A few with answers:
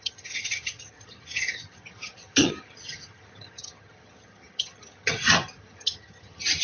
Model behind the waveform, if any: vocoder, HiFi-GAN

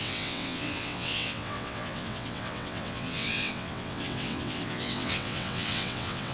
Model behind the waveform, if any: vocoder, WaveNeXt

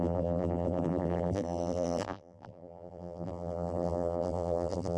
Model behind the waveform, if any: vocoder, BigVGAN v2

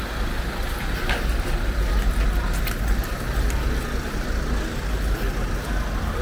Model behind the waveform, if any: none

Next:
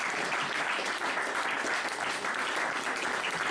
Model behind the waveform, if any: none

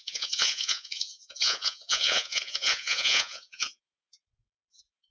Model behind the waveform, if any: vocoder, Vocos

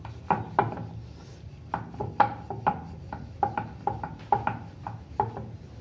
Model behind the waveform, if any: none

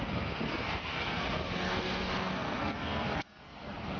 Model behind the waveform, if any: codec, SNAC